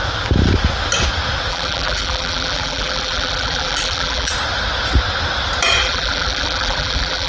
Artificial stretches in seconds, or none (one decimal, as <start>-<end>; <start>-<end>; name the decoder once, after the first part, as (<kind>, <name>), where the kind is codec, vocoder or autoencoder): 1.5-4.3 (vocoder, BigVGAN v2); 5.8-7.3